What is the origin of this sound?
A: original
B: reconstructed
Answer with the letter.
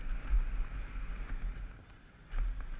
A